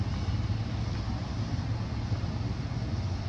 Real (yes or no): yes